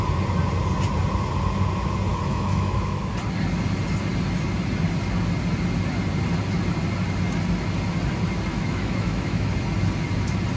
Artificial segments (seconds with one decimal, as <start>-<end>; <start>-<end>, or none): 2.1-3.1; 8.5-9.5